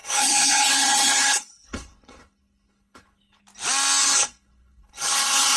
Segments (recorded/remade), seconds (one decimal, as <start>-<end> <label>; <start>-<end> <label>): 0.0-3.4 remade; 3.4-4.0 recorded; 4.0-5.6 remade